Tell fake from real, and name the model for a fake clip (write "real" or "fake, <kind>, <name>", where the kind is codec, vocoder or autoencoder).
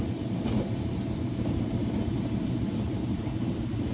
fake, vocoder, BigVGAN v2